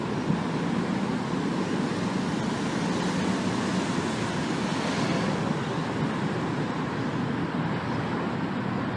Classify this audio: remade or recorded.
recorded